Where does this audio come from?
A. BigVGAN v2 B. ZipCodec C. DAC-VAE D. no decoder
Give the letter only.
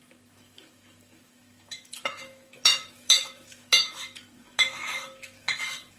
C